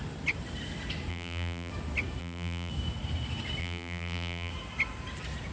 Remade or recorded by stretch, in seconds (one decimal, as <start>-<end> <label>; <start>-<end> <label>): 0.0-1.1 recorded; 1.1-1.7 remade; 1.7-2.2 recorded; 2.2-2.7 remade; 2.7-3.6 recorded; 3.6-4.5 remade; 4.5-5.5 recorded